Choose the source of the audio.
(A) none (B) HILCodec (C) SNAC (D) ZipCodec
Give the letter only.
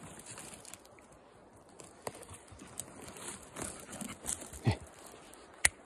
A